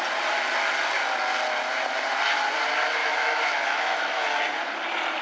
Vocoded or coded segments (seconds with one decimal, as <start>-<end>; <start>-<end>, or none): 3.0-4.4